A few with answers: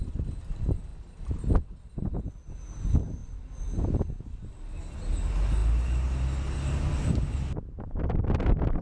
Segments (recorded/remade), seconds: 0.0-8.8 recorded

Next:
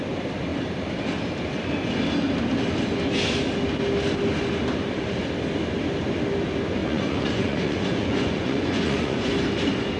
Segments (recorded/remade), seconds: 0.0-6.8 recorded; 6.8-9.3 remade; 9.3-10.0 recorded

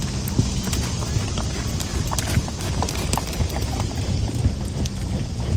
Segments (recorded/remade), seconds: 0.0-1.9 recorded; 1.9-2.6 remade; 2.6-3.6 recorded; 3.6-4.6 remade; 4.6-5.6 recorded

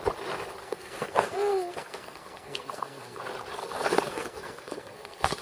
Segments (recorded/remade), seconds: 0.0-0.6 recorded; 0.6-3.2 remade; 3.2-3.6 recorded; 3.6-5.4 remade

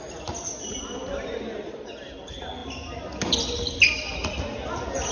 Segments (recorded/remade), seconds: 0.0-5.1 recorded

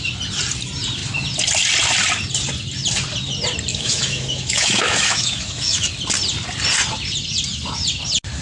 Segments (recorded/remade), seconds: 0.0-3.7 recorded; 3.7-5.9 remade; 5.9-8.4 recorded

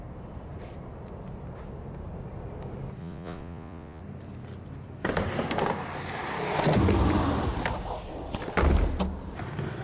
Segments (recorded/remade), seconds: 0.0-3.0 recorded; 3.0-4.0 remade; 4.0-9.8 recorded